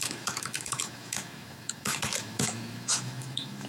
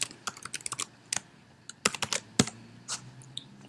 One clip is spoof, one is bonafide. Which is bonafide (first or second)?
second